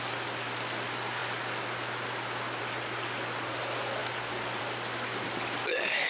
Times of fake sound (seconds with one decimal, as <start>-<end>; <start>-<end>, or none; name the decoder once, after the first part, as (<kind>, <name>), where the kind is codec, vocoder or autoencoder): none